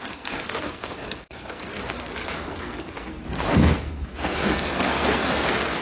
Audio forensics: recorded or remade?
remade